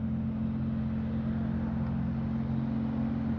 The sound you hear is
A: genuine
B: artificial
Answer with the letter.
A